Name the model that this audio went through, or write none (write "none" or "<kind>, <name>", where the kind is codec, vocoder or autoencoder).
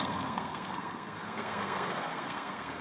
codec, SNAC